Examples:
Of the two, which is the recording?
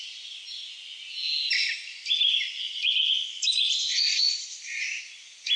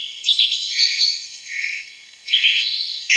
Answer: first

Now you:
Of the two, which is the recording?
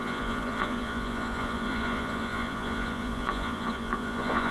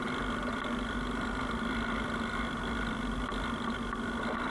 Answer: second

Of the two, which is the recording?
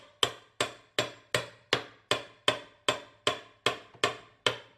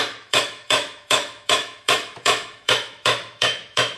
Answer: first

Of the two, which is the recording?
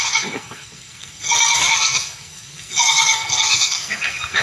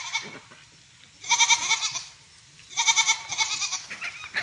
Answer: second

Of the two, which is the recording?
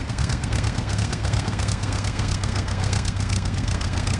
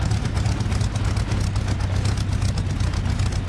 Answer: second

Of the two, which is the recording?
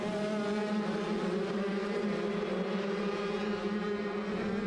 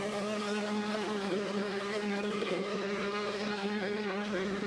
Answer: first